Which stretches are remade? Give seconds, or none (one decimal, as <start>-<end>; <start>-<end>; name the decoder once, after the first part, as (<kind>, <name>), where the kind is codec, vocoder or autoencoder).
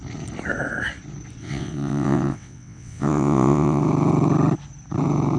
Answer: 1.4-3.8 (vocoder, WaveNeXt)